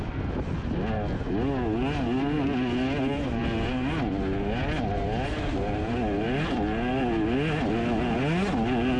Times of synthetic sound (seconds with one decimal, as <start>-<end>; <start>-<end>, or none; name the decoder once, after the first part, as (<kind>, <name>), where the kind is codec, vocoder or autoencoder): none